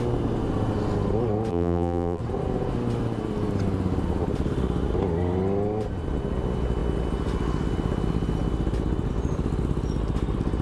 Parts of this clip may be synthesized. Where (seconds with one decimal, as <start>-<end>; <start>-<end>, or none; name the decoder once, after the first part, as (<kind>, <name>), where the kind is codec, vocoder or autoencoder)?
1.5-2.2 (vocoder, BigVGAN v2)